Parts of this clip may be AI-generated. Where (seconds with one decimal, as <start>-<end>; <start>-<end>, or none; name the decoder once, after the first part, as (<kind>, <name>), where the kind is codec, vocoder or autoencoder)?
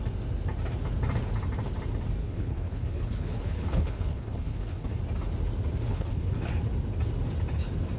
2.2-5.0 (codec, HILCodec); 5.9-6.5